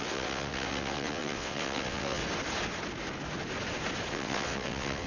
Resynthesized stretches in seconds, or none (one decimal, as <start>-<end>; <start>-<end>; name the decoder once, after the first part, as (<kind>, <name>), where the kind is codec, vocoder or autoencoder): 0.0-2.2 (vocoder, WaveNeXt); 4.1-5.1